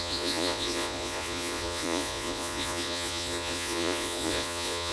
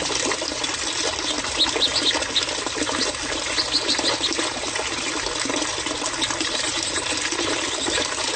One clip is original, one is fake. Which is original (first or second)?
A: second